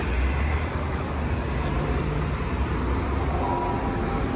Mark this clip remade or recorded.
recorded